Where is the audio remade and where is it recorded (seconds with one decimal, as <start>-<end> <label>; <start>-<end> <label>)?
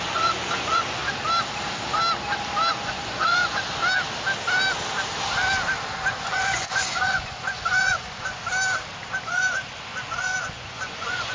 0.0-1.0 remade; 1.0-2.7 recorded; 2.7-3.8 remade; 3.8-6.1 recorded; 6.1-8.4 remade; 8.4-9.2 recorded; 9.2-11.3 remade